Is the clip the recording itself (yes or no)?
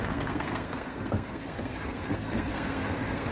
no